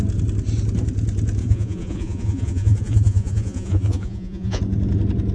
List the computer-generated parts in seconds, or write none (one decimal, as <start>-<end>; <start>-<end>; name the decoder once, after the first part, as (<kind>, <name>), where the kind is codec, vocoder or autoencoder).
1.4-4.6 (vocoder, Vocos)